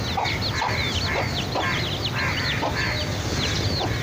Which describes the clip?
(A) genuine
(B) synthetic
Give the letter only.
A